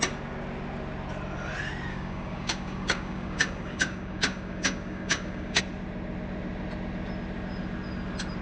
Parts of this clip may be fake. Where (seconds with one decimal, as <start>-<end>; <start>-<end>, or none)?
1.9-5.6